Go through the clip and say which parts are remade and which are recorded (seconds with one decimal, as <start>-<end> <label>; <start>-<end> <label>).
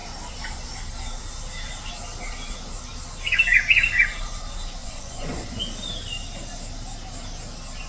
0.0-4.8 recorded; 4.8-5.6 remade; 5.6-7.9 recorded